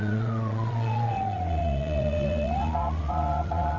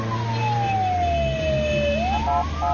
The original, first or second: second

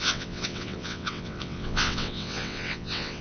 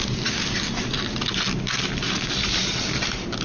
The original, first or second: second